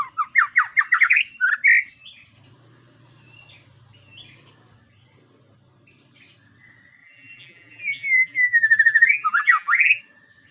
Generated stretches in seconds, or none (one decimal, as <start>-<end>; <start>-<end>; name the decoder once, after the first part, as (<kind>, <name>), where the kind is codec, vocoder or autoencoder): 7.0-10.0 (vocoder, BigVGAN v2)

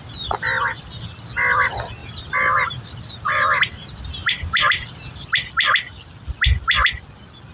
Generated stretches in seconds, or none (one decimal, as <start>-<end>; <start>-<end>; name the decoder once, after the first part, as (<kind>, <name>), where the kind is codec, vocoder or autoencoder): 2.0-5.5 (vocoder, BigVGAN v2)